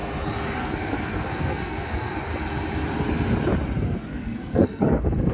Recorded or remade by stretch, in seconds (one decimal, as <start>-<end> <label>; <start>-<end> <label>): 0.0-0.6 recorded; 0.6-2.3 remade; 2.3-4.0 recorded; 4.0-5.3 remade